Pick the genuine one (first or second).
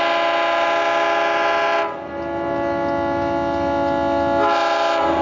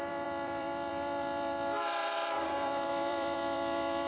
first